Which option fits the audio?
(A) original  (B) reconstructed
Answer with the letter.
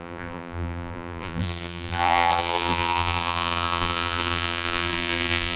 B